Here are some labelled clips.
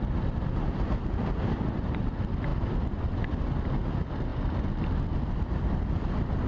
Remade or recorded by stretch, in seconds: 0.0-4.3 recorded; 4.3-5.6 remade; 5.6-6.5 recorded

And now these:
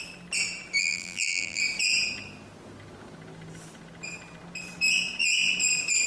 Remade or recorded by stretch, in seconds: 0.0-0.8 recorded; 0.8-1.6 remade; 1.6-6.1 recorded

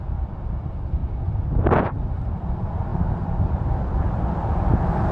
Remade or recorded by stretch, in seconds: 0.0-2.9 recorded; 2.9-4.3 remade; 4.3-5.1 recorded

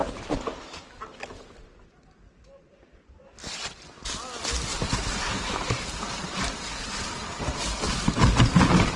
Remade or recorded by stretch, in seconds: 0.0-4.7 recorded; 4.7-7.6 remade; 7.6-9.0 recorded

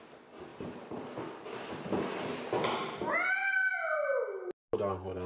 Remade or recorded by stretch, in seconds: 0.0-5.3 recorded

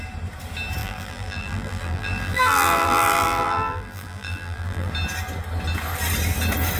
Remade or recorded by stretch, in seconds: 0.0-0.8 recorded; 0.8-4.9 remade; 4.9-6.8 recorded

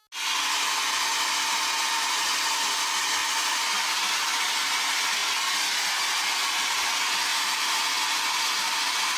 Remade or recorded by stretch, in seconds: 0.0-3.2 recorded; 3.2-4.8 remade; 4.8-7.3 recorded; 7.3-7.8 remade; 7.8-9.2 recorded

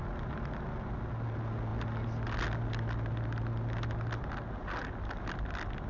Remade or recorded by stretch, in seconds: 0.0-5.9 recorded